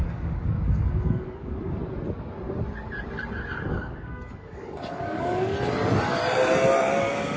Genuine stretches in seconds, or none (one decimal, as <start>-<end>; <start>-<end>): 1.8-3.7; 5.5-7.0